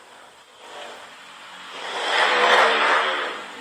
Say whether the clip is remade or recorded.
recorded